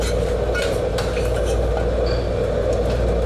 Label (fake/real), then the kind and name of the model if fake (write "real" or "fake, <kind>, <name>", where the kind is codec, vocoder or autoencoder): real